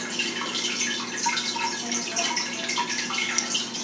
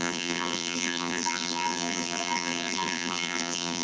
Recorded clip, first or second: first